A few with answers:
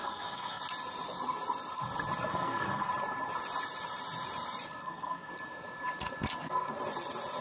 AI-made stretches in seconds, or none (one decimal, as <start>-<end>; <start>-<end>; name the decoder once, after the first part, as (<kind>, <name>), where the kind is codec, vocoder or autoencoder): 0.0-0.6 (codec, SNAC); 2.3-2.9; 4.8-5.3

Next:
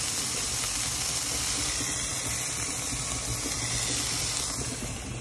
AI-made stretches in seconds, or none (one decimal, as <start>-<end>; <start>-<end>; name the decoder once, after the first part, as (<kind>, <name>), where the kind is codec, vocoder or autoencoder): none

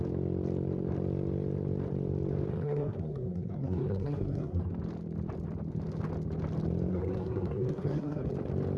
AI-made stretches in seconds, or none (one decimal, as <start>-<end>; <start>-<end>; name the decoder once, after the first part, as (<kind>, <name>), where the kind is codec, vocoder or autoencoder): 2.5-4.7 (codec, SNAC); 6.9-8.3